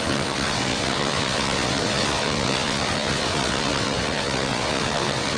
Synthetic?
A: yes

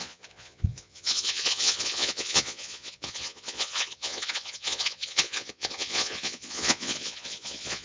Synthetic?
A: yes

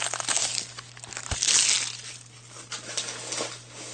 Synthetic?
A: no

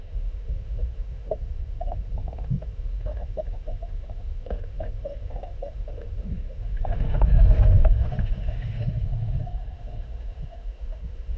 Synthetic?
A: yes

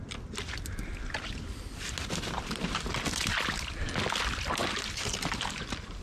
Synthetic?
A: no